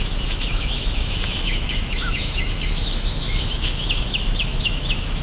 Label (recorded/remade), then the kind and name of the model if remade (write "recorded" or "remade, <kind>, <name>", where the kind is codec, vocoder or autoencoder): remade, autoencoder, DAC-VAE